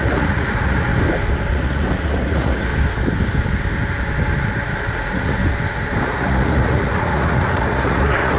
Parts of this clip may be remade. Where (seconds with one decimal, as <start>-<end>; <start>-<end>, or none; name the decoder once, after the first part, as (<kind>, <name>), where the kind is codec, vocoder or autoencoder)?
0.0-0.9 (vocoder, Vocos); 1.5-2.7; 4.9-5.4; 6.0-8.4